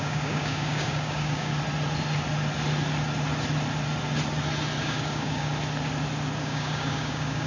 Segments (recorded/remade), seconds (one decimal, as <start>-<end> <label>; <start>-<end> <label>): 0.0-1.5 remade; 1.5-4.8 recorded; 4.8-5.5 remade; 5.5-6.4 recorded; 6.4-7.5 remade